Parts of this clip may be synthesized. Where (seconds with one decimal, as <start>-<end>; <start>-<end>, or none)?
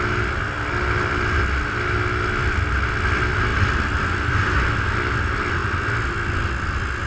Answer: none